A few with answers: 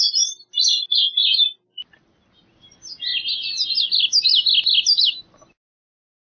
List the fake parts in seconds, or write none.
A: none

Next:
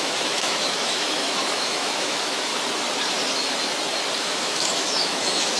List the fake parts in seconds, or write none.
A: 0.0-2.5 (autoencoder, DAC-VAE); 4.2-5.6

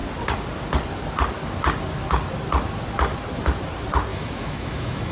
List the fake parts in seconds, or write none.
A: 4.1-5.1 (autoencoder, DAC-VAE)

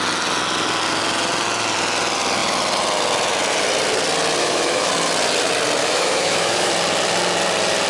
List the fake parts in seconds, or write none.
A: 4.4-4.9 (autoencoder, DAC-VAE); 5.8-6.7

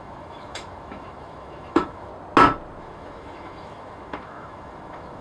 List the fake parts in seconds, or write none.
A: 0.0-2.1 (autoencoder, DAC-VAE); 2.8-5.2

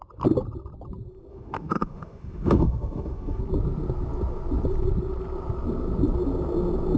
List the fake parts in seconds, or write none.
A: 1.3-3.4 (autoencoder, DAC-VAE)

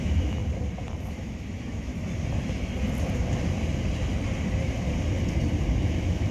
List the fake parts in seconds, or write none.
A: 0.0-0.4 (autoencoder, DAC-VAE); 1.1-1.9; 5.7-6.3